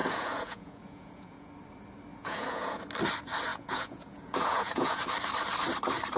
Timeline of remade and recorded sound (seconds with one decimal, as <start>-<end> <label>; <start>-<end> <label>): 0.0-1.5 remade; 1.5-2.1 recorded; 2.1-2.8 remade; 2.8-3.5 recorded; 3.5-5.0 remade; 5.0-6.2 recorded